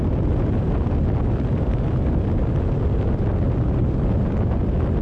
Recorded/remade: recorded